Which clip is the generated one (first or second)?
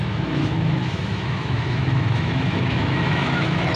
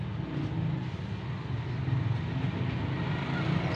first